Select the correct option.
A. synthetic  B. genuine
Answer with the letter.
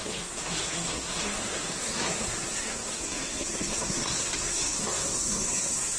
A